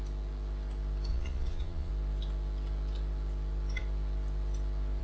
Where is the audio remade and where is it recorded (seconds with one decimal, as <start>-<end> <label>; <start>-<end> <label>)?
0.0-1.1 recorded; 1.1-1.9 remade; 1.9-5.0 recorded